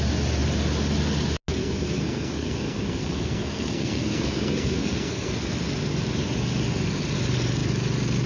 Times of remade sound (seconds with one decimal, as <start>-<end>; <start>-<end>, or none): 1.6-5.3